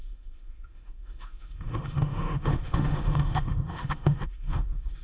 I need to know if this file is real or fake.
fake